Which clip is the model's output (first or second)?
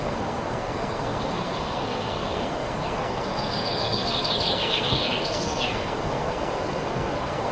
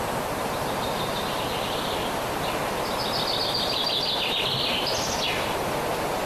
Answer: first